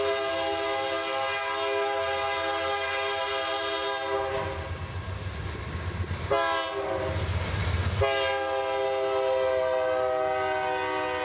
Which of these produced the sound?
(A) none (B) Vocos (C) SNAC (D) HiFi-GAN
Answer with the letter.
A